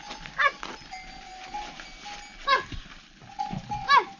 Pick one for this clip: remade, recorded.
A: recorded